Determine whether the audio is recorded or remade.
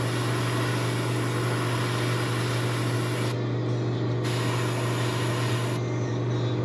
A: recorded